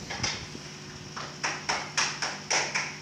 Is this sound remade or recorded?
recorded